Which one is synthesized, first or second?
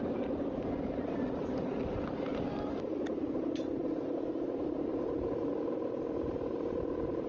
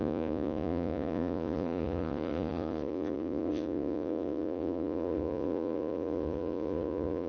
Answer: second